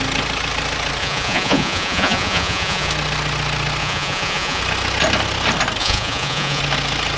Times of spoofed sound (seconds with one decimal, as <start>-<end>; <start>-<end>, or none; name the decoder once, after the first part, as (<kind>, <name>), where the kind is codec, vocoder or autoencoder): 1.0-2.9 (vocoder, Vocos); 3.8-4.6; 5.8-6.6